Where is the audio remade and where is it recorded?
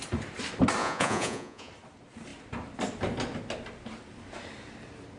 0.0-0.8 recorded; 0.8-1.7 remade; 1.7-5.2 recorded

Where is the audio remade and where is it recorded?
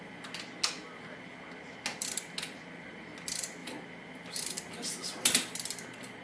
0.0-6.2 recorded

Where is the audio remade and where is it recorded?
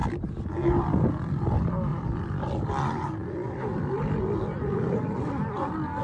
0.0-1.9 recorded; 1.9-2.7 remade; 2.7-6.0 recorded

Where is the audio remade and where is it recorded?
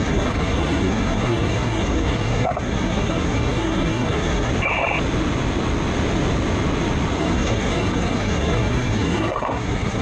0.0-4.5 remade; 4.5-7.2 recorded; 7.2-10.0 remade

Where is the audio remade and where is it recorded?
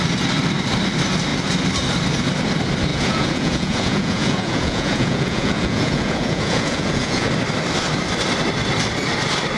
0.0-2.9 recorded; 2.9-7.3 remade; 7.3-9.6 recorded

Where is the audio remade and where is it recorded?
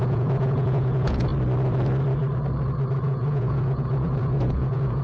0.0-1.3 remade; 1.3-3.0 recorded; 3.0-5.0 remade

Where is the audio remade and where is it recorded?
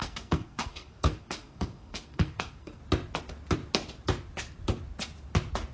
0.0-2.8 remade; 2.8-5.7 recorded